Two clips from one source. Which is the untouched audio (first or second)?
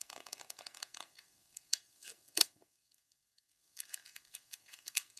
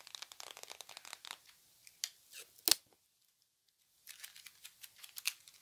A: second